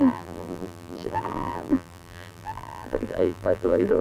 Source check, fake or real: fake